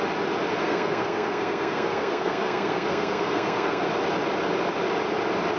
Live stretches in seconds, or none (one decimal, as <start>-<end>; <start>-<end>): 0.0-0.6; 3.9-5.6